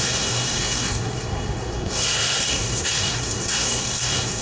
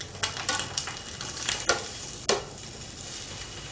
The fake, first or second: first